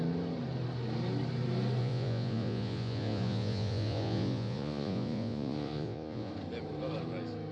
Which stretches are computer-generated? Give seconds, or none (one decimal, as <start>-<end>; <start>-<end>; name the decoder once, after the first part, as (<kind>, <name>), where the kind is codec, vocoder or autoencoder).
1.8-6.3 (vocoder, Vocos)